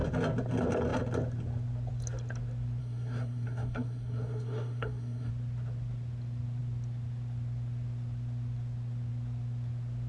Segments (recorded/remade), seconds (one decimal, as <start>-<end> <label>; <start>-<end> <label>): 0.0-2.8 recorded; 2.8-5.3 remade; 5.3-10.1 recorded